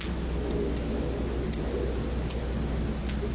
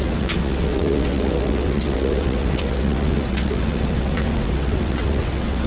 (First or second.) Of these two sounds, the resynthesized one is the second